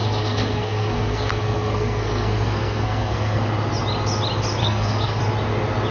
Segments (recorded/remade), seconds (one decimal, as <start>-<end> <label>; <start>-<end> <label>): 0.0-3.5 remade; 3.5-4.6 recorded; 4.6-5.2 remade; 5.2-5.9 recorded